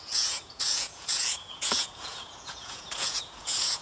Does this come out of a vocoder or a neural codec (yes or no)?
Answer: yes